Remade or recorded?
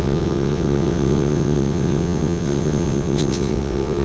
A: remade